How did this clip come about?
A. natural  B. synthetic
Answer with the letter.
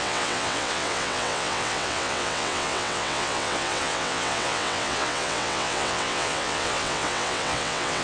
B